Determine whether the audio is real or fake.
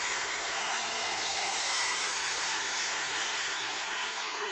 fake